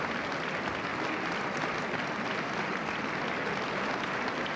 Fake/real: real